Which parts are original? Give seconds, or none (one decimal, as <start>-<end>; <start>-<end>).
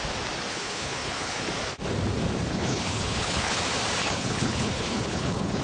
0.0-0.5; 1.4-2.5; 3.6-4.0